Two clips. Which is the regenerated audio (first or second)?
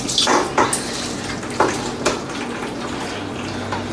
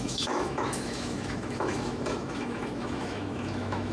second